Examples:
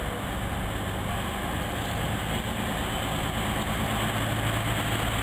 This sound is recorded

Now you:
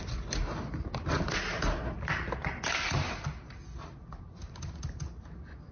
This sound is recorded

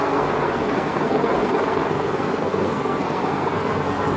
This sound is remade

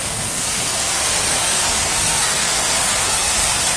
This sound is remade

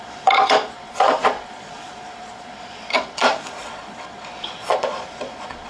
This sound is remade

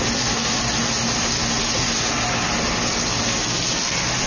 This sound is recorded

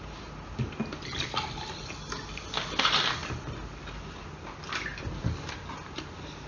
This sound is recorded